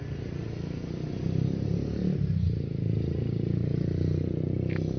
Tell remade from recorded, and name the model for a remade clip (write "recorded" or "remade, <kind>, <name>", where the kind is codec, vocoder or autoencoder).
recorded